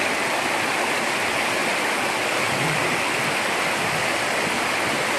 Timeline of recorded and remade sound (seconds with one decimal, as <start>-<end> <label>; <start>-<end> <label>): 0.0-5.2 recorded